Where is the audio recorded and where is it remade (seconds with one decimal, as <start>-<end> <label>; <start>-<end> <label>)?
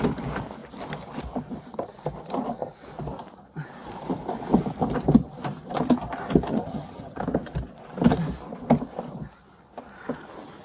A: 0.0-6.5 recorded; 6.5-7.2 remade; 7.2-10.6 recorded